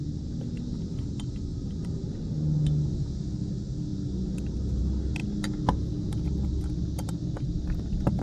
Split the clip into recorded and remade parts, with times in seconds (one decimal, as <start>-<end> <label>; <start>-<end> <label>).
0.0-1.5 recorded; 1.5-2.3 remade; 2.3-3.9 recorded; 3.9-4.8 remade; 4.8-8.2 recorded